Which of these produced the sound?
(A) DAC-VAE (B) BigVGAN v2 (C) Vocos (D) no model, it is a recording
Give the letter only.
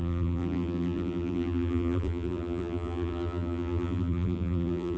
B